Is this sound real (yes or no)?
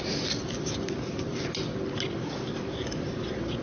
yes